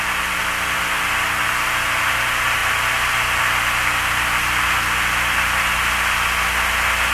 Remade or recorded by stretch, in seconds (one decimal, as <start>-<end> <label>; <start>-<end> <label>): 0.0-7.1 recorded